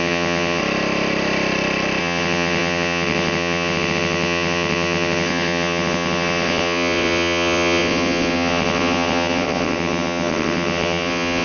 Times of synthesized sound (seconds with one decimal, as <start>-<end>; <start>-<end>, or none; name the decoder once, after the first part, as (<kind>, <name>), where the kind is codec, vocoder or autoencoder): 0.0-0.6 (vocoder, WaveNeXt); 2.0-11.4